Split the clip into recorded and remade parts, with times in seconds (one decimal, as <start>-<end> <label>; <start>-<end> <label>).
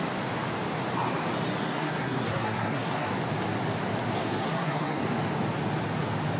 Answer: 0.0-1.6 recorded; 1.6-3.1 remade; 3.1-4.2 recorded; 4.2-5.0 remade; 5.0-6.4 recorded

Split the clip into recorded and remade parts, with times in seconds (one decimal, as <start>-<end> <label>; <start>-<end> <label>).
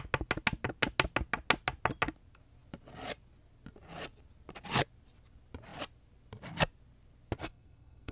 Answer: 0.0-7.4 recorded; 7.4-8.1 remade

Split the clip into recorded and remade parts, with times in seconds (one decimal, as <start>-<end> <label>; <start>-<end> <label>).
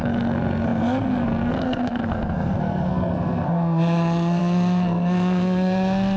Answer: 0.0-6.2 remade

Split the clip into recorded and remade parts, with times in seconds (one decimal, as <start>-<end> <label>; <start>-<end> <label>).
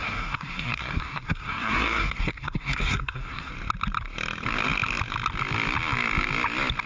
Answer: 0.0-3.5 remade; 3.5-6.9 recorded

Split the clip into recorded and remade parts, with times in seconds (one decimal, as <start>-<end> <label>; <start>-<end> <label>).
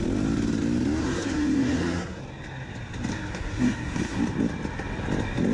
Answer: 0.0-1.0 recorded; 1.0-2.2 remade; 2.2-3.1 recorded; 3.1-4.2 remade; 4.2-5.5 recorded